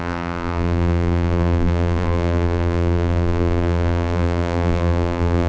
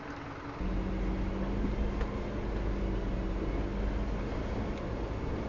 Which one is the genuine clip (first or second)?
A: second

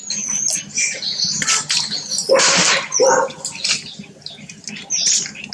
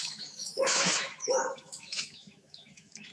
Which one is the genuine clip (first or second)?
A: first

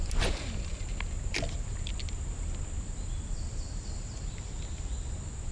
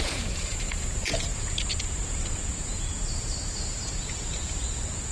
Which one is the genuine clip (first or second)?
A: first